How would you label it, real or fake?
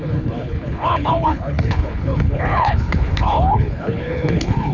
fake